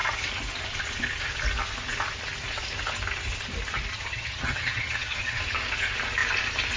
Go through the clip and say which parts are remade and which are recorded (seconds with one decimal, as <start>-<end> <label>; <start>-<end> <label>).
0.0-3.9 recorded; 3.9-5.4 remade; 5.4-6.8 recorded